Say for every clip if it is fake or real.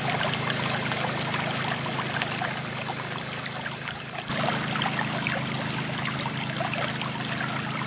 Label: real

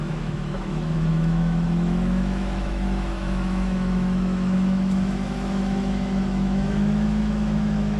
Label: fake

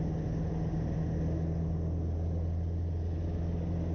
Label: real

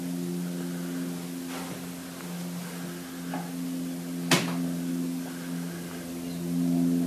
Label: real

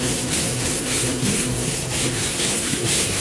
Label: fake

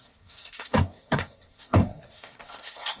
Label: fake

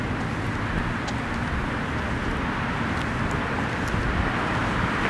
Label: real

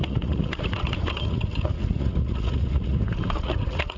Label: fake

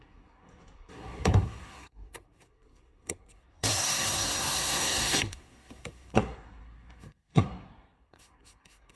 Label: fake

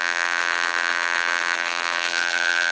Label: fake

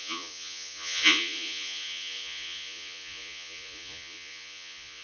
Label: fake